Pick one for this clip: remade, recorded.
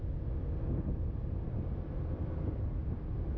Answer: recorded